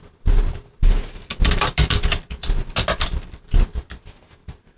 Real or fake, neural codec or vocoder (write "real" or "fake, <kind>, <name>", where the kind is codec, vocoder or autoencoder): real